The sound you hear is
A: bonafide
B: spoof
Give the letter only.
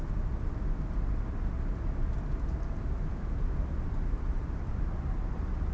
A